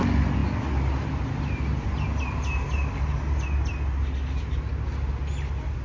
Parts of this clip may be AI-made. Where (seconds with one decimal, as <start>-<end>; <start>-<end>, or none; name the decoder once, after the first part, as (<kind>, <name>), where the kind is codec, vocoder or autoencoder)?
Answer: none